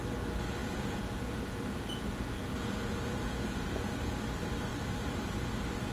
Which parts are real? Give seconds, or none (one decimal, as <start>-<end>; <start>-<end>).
0.0-0.6; 4.1-5.9